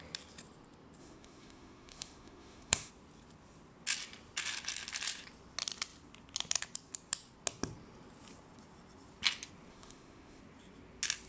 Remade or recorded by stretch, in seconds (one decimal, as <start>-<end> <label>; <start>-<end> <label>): 0.0-1.0 recorded; 1.0-2.9 remade; 2.9-9.7 recorded; 9.7-10.4 remade; 10.4-11.3 recorded